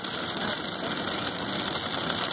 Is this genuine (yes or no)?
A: no